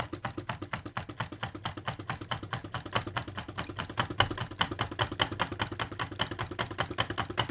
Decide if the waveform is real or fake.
real